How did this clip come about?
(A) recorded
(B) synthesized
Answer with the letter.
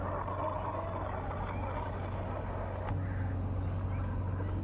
A